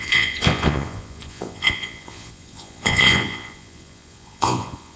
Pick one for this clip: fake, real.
fake